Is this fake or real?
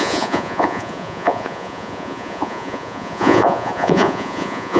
fake